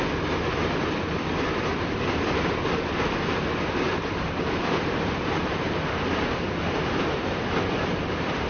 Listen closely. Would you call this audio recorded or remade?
recorded